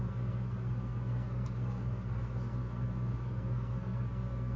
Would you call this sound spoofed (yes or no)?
yes